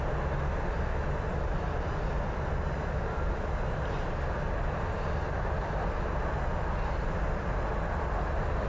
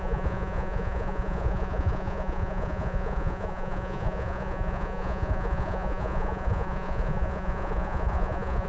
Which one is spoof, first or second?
second